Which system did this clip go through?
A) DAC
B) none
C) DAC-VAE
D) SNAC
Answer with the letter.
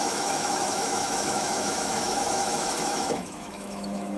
C